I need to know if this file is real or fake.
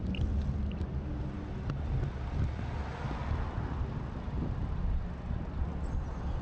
real